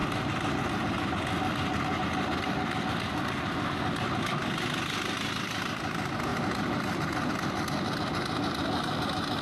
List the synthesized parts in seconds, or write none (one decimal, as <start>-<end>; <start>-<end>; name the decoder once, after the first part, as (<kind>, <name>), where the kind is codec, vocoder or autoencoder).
none